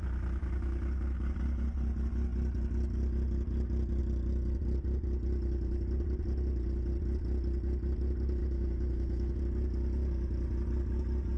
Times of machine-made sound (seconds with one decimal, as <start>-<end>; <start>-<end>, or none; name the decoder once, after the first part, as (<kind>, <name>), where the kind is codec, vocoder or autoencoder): 8.4-9.4 (autoencoder, DAC-VAE)